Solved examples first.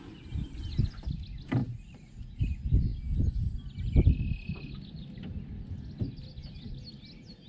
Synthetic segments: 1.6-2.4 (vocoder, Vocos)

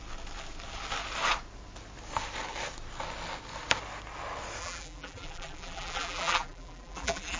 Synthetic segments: 4.6-7.4 (vocoder, BigVGAN v2)

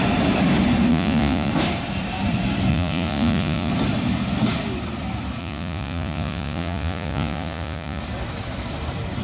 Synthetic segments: 0.9-1.5 (vocoder, Vocos); 2.7-3.7; 5.4-8.0

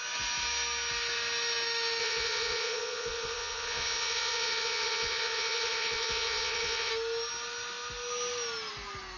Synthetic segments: 2.0-6.9 (vocoder, Vocos)

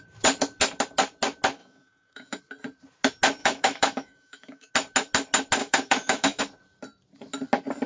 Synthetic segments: 1.6-2.4 (autoencoder, DAC-VAE); 3.4-4.7; 5.6-6.4